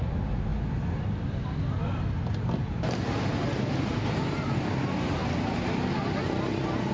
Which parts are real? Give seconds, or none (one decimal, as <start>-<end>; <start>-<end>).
0.5-4.4; 5.2-6.9